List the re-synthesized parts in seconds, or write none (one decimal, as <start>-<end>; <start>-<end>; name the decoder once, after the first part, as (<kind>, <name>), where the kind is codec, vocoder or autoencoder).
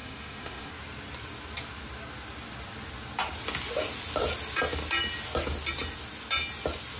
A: 0.0-0.7 (autoencoder, DAC-VAE)